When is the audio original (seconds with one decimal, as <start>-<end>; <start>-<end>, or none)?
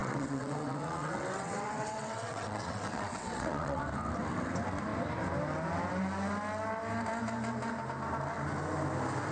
3.8-9.3